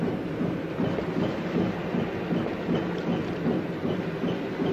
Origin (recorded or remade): recorded